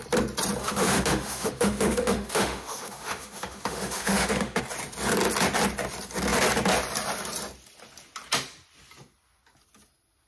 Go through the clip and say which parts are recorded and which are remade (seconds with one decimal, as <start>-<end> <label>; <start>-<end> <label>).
0.0-0.6 recorded; 0.6-4.6 remade; 4.6-10.3 recorded

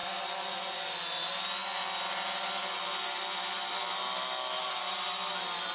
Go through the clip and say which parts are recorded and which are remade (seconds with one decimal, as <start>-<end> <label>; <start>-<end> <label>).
0.0-5.7 recorded

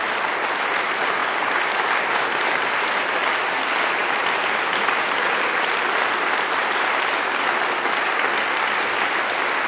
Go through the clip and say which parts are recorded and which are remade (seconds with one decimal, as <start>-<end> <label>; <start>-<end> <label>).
0.0-9.7 recorded

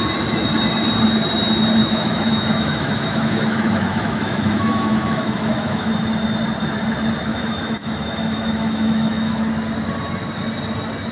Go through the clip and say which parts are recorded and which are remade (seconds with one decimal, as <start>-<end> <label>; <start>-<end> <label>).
0.0-1.8 recorded; 1.8-5.9 remade; 5.9-7.3 recorded; 7.3-9.5 remade; 9.5-11.1 recorded

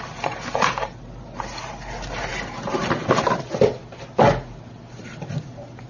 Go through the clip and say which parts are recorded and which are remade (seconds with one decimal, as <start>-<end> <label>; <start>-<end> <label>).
0.0-5.9 recorded

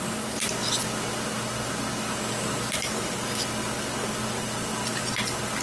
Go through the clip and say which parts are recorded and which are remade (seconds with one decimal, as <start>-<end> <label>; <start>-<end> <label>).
0.0-5.6 recorded

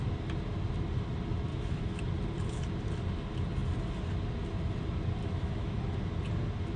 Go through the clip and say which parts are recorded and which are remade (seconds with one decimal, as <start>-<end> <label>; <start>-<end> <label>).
0.0-1.5 recorded; 1.5-2.0 remade; 2.0-5.2 recorded; 5.2-5.8 remade; 5.8-6.8 recorded

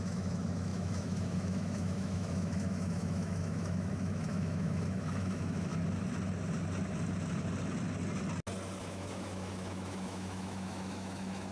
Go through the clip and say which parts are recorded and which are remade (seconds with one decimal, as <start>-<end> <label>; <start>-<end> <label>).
0.0-5.7 remade; 5.7-8.8 recorded; 8.8-11.5 remade